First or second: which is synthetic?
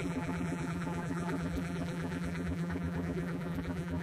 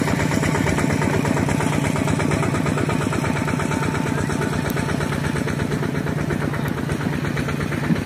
first